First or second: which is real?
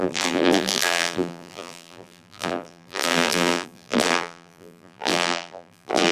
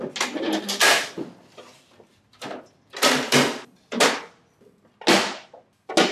second